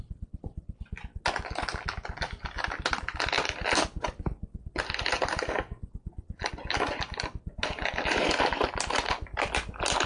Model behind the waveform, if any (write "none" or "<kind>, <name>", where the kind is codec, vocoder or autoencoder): none